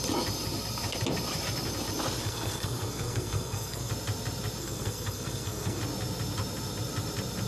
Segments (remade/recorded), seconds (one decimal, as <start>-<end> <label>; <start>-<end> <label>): 0.0-2.2 recorded; 2.2-3.9 remade; 3.9-4.6 recorded; 4.6-5.8 remade; 5.8-7.5 recorded